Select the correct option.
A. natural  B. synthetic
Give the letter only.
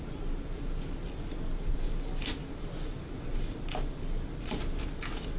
A